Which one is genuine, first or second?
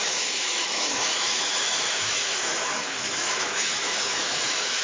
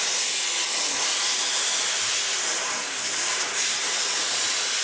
second